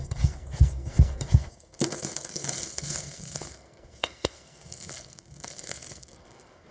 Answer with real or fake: fake